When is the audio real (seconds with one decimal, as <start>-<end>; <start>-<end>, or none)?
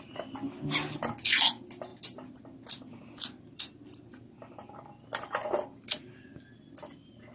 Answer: 0.0-7.3